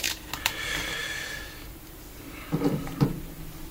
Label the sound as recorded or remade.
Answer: remade